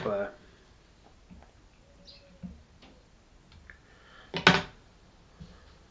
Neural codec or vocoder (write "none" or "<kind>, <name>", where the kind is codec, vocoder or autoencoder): none